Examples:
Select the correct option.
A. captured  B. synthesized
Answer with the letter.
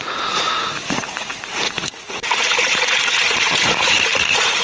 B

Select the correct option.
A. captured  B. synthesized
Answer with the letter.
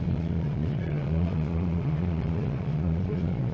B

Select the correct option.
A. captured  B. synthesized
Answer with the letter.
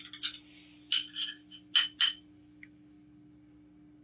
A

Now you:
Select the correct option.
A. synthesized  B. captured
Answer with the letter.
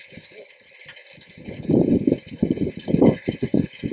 B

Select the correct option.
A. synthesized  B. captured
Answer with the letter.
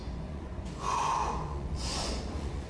A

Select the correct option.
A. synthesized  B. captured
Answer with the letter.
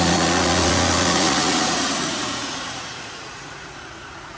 A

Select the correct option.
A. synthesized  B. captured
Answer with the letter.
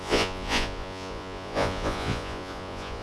A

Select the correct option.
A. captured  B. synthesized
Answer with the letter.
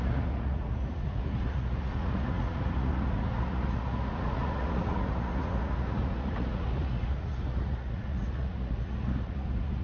B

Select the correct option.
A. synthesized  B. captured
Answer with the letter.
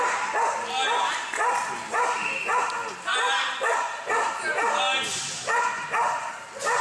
B